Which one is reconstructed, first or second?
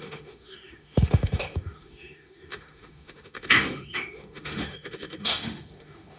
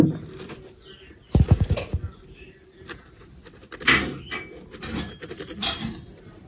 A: first